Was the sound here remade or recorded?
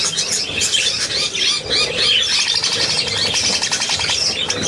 recorded